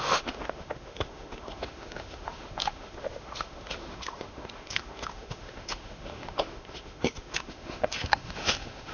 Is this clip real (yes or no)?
no